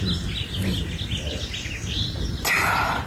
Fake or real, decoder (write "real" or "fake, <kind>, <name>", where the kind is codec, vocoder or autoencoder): real